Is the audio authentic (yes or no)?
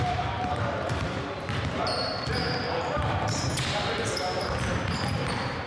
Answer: no